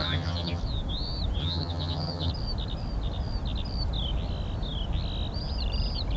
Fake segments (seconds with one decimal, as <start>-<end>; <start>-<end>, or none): 0.0-0.6; 1.4-2.3